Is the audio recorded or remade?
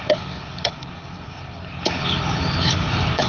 remade